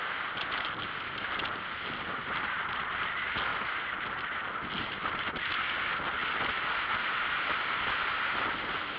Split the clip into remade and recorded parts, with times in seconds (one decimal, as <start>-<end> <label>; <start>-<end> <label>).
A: 0.0-9.0 recorded